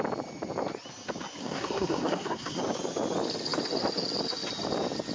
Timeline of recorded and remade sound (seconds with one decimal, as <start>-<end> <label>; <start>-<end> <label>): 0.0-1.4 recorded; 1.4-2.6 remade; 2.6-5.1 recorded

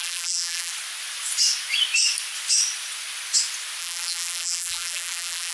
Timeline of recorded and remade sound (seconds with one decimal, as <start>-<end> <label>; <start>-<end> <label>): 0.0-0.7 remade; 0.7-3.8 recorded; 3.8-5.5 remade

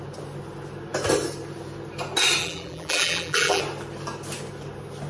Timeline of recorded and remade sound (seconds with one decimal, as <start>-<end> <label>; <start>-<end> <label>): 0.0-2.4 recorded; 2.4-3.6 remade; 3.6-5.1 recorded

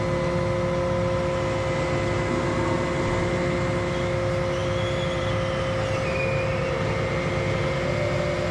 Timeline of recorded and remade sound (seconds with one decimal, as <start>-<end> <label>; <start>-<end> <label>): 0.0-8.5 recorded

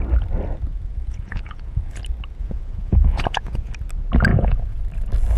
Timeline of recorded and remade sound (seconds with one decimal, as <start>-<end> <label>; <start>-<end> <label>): 0.0-0.7 recorded; 0.7-2.0 remade; 2.0-2.4 recorded; 2.4-3.7 remade; 3.7-4.3 recorded; 4.3-4.8 remade; 4.8-5.4 recorded